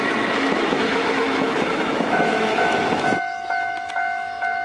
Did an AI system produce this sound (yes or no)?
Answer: yes